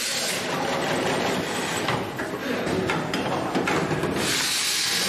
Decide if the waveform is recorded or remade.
recorded